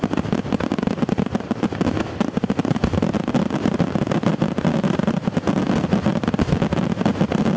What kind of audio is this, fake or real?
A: real